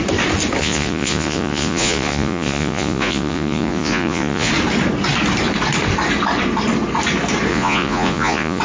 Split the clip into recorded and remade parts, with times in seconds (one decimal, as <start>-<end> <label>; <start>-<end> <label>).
0.0-0.6 recorded; 0.6-4.5 remade; 4.5-7.5 recorded; 7.5-8.6 remade